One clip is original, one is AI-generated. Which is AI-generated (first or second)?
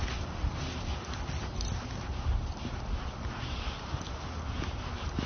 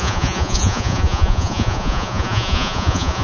second